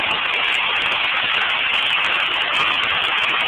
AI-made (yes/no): no